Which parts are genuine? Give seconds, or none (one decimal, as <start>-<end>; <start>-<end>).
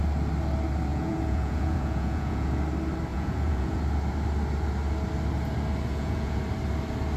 0.0-0.9; 2.6-3.1; 3.8-5.9; 6.4-7.2